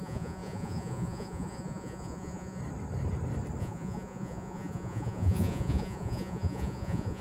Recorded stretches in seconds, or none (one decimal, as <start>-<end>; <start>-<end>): 2.6-3.6